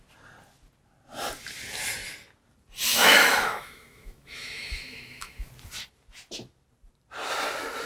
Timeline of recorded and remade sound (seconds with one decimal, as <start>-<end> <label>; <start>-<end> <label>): 0.0-2.9 recorded; 2.9-5.5 remade; 5.5-7.9 recorded